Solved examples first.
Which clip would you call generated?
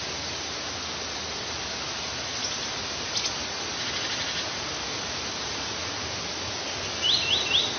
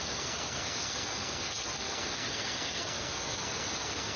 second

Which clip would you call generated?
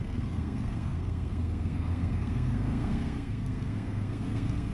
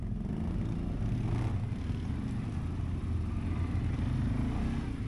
first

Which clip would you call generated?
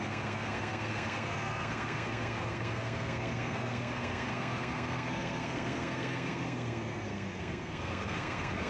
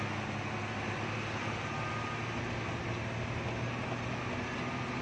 first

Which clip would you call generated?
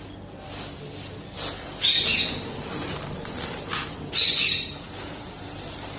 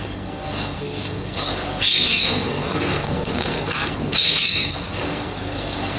second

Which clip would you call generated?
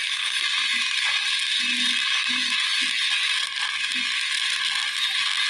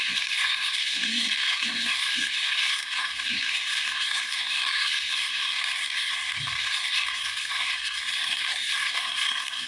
second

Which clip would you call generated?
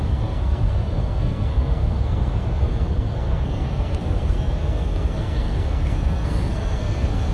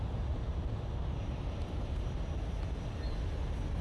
first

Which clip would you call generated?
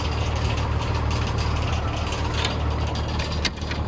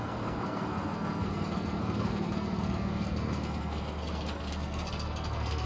second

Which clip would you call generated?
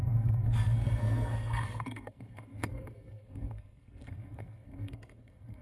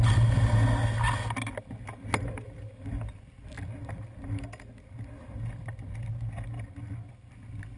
first